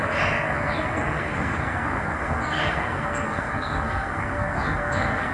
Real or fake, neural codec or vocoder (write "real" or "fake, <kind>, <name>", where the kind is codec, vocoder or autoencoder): fake, codec, SNAC